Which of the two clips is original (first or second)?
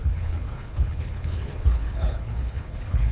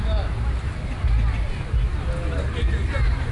second